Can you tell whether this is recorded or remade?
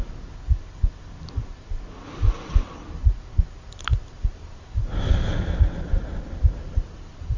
recorded